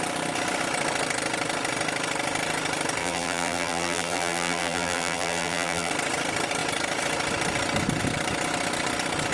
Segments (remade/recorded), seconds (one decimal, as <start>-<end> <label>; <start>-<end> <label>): 0.0-3.0 recorded; 3.0-5.9 remade; 5.9-9.3 recorded